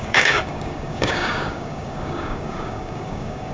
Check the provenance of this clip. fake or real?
fake